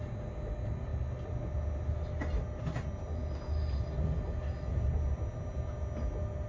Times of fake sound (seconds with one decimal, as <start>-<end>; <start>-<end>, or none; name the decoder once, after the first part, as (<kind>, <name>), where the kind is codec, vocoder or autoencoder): none